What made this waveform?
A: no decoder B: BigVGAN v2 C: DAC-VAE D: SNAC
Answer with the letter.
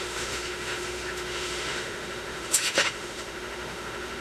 C